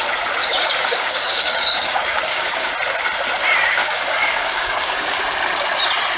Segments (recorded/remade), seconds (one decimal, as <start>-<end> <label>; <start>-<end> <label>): 0.0-0.4 recorded; 0.4-2.7 remade; 2.7-3.8 recorded; 3.8-5.2 remade; 5.2-6.2 recorded